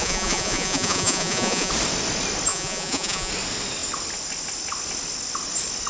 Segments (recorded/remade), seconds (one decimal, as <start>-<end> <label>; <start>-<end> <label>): 0.0-1.7 remade; 1.7-2.5 recorded; 2.5-3.3 remade; 3.3-5.9 recorded